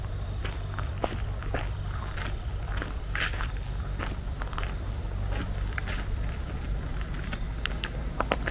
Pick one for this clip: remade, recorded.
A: recorded